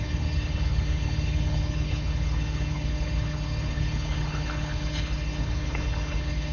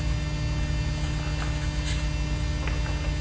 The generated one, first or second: first